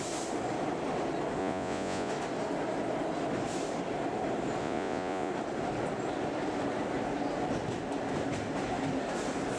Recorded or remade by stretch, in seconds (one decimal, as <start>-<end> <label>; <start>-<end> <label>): 0.0-1.4 recorded; 1.4-2.1 remade; 2.1-4.6 recorded; 4.6-5.3 remade; 5.3-9.6 recorded